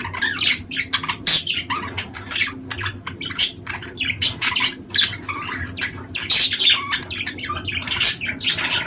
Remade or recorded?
recorded